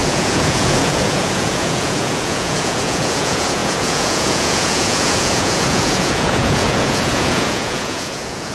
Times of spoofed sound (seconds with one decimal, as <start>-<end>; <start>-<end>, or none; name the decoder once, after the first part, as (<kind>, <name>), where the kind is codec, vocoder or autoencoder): 0.0-8.5 (vocoder, Vocos)